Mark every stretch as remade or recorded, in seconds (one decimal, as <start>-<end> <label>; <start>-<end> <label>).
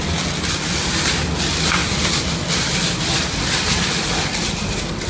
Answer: 0.0-5.1 recorded